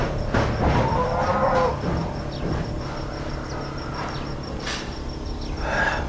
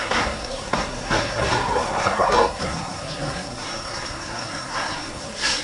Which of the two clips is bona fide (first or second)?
first